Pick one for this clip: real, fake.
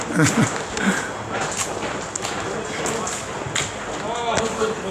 real